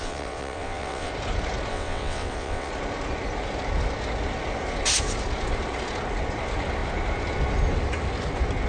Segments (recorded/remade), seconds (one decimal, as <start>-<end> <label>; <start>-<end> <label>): 0.0-1.1 remade; 1.1-1.7 recorded; 1.7-2.7 remade; 2.7-8.7 recorded